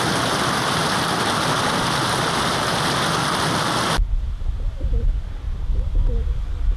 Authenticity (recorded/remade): recorded